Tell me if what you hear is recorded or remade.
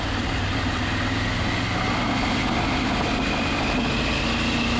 recorded